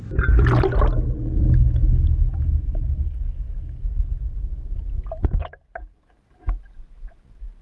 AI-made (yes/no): no